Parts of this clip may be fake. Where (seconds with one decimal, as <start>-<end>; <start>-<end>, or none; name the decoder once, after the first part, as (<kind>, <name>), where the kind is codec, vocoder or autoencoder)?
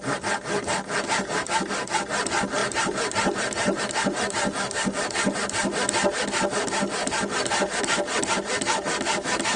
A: 2.6-3.8 (vocoder, BigVGAN v2); 7.0-7.8